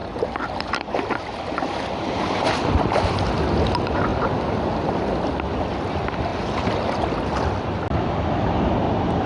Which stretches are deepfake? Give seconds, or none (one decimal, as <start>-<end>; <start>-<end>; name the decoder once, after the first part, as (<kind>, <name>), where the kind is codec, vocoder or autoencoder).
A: 0.0-3.1 (vocoder, BigVGAN v2); 4.1-5.0; 6.3-7.8